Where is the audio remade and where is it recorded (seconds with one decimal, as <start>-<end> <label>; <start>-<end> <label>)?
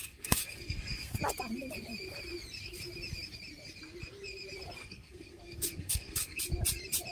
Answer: 0.0-1.2 remade; 1.2-4.8 recorded; 4.8-6.4 remade; 6.4-7.1 recorded